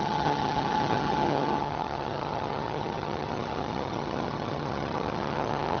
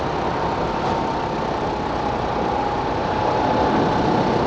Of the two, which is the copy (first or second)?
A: first